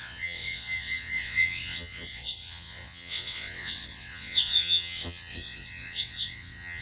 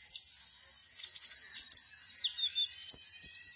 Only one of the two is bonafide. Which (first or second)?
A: second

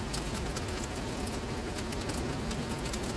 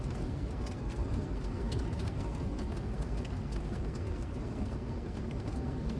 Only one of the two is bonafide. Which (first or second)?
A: first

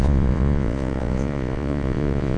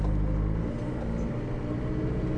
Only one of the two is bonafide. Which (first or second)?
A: second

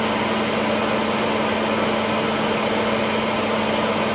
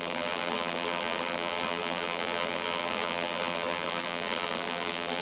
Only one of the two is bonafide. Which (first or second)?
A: first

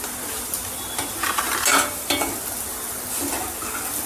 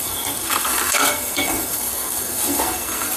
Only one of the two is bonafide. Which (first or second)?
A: first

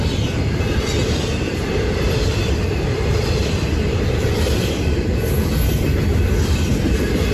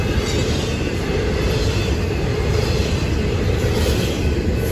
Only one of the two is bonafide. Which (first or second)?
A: second